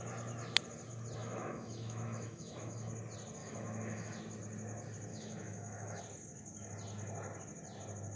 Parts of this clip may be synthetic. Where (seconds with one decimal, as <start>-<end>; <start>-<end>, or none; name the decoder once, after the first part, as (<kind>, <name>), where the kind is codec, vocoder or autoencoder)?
1.2-2.9 (autoencoder, DAC-VAE); 3.4-4.2; 5.1-6.0